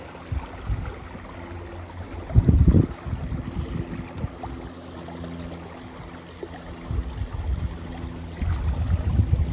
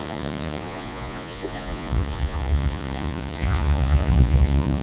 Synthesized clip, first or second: second